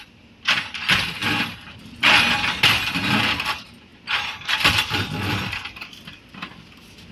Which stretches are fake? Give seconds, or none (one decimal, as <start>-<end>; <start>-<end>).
none